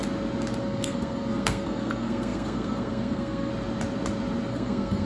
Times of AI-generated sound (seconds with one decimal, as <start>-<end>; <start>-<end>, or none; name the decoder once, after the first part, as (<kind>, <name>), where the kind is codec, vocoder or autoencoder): 0.6-3.5 (codec, SNAC); 4.5-5.1